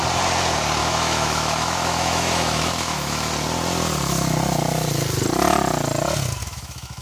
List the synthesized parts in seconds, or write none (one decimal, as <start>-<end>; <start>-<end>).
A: 0.8-3.3; 6.4-7.0